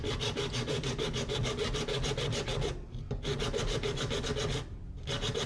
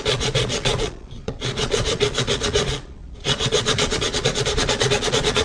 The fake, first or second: second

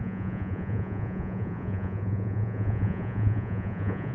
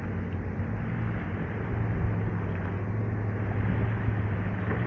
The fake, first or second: first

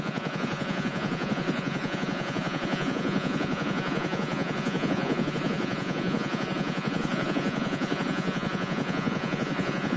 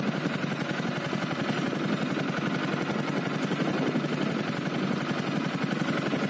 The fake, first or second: first